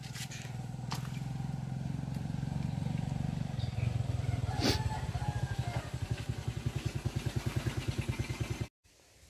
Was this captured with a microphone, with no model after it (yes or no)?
yes